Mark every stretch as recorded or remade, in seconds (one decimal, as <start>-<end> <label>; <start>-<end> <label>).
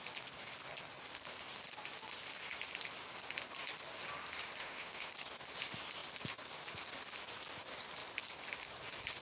0.0-4.6 recorded; 4.6-5.1 remade; 5.1-9.2 recorded